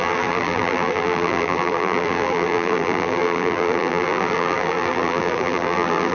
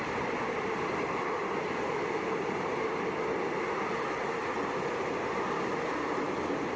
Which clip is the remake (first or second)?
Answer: first